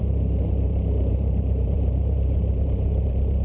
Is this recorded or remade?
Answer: remade